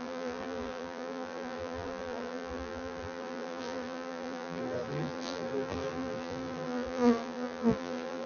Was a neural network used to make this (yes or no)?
yes